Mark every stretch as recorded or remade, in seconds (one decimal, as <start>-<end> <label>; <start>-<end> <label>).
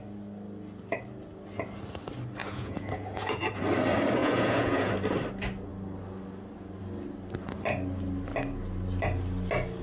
0.0-2.4 recorded; 2.4-3.6 remade; 3.6-4.2 recorded; 4.2-4.9 remade; 4.9-9.8 recorded